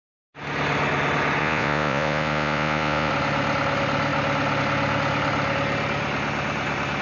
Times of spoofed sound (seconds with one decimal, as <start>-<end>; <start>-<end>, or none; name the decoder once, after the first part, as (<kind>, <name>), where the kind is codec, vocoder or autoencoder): 1.4-3.1 (vocoder, Vocos)